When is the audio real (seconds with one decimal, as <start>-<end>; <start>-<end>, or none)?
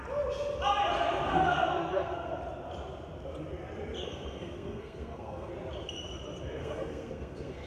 0.0-1.3; 2.4-4.0; 5.5-6.6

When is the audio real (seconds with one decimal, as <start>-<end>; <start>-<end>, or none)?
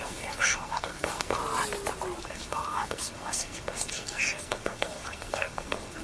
1.4-2.2